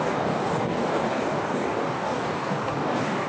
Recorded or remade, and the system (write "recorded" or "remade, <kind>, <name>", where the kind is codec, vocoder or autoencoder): remade, codec, DAC